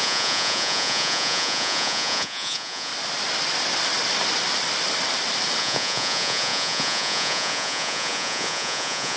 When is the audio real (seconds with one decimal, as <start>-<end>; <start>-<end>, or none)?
2.9-5.6

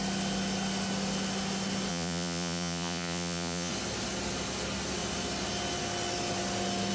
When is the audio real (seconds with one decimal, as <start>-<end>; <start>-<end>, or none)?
0.0-1.9; 3.7-6.9